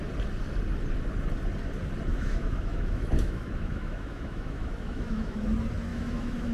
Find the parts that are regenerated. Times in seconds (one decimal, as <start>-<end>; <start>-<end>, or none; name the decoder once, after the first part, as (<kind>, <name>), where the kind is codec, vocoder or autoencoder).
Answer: 2.1-5.5 (autoencoder, DAC-VAE); 5.9-6.5